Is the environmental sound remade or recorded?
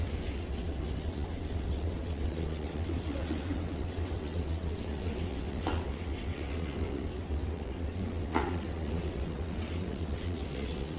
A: remade